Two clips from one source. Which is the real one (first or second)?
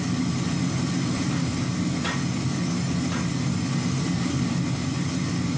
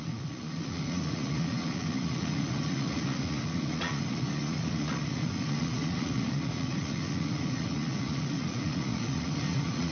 first